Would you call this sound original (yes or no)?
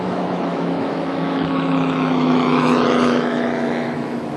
no